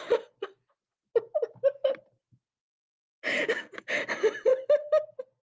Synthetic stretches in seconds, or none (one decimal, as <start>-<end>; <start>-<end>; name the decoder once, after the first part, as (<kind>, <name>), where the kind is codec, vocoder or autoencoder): 3.4-4.0 (codec, DAC)